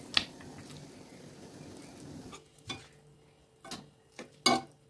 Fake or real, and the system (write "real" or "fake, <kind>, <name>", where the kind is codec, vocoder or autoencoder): real